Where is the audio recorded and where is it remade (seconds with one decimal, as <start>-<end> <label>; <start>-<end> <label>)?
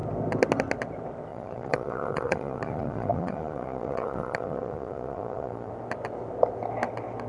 0.0-1.3 recorded; 1.3-5.7 remade; 5.7-7.3 recorded